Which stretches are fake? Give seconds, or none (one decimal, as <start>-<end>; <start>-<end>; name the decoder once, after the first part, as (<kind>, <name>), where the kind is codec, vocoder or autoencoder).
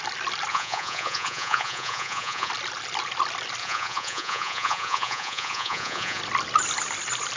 0.5-2.5 (vocoder, Vocos); 3.6-6.2